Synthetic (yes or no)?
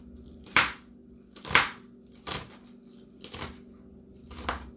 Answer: no